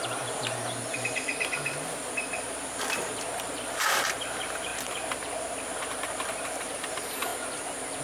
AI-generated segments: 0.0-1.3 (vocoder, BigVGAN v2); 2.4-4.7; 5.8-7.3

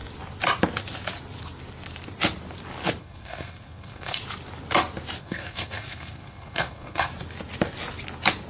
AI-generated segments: 3.0-4.2 (codec, SNAC); 5.2-7.1

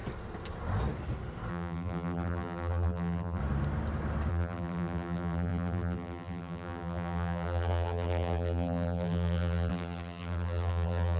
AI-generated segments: 1.5-3.4 (vocoder, BigVGAN v2); 4.3-11.2

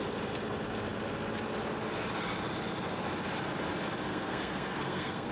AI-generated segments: 4.1-5.3 (codec, SNAC)

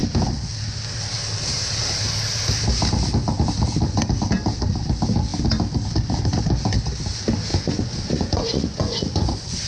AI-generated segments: 7.5-9.7 (vocoder, Vocos)

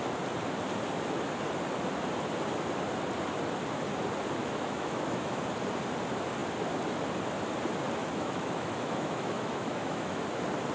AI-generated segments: 4.4-5.4 (autoencoder, DAC-VAE); 8.0-10.2

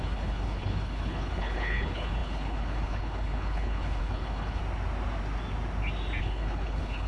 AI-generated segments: 0.0-4.6 (codec, HILCodec); 6.2-7.1